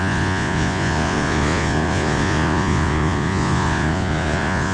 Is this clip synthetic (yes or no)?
yes